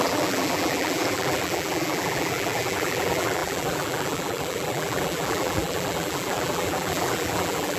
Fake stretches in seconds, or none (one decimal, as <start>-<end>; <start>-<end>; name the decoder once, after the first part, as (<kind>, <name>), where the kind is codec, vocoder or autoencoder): 0.0-7.8 (vocoder, BigVGAN v2)